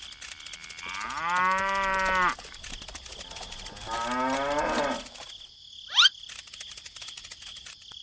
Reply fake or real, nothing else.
real